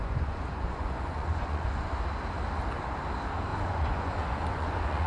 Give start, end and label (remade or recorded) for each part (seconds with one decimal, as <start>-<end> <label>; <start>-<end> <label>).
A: 0.0-1.9 remade; 1.9-3.5 recorded; 3.5-5.1 remade